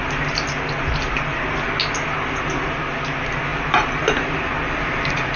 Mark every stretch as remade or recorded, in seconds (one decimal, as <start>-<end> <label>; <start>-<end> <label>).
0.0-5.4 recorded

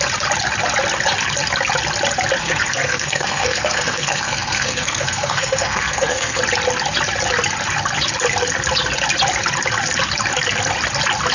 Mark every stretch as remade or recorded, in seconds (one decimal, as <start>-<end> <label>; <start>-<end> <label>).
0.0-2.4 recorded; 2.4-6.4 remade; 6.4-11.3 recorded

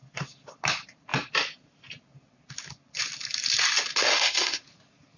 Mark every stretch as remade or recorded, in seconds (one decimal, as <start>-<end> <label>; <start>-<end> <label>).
0.0-4.0 recorded; 4.0-4.6 remade; 4.6-5.2 recorded

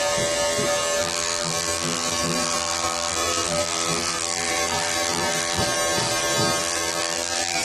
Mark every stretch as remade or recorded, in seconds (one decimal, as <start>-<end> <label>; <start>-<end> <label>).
0.0-1.0 recorded; 1.0-5.6 remade; 5.6-6.6 recorded; 6.6-7.6 remade

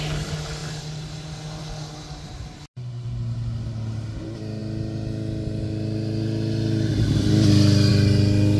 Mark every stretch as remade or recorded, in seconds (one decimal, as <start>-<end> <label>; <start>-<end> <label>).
0.0-8.6 recorded

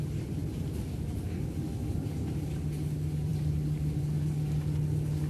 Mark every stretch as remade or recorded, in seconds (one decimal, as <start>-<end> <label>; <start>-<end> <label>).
0.0-5.3 recorded